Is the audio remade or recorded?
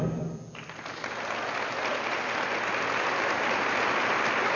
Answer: recorded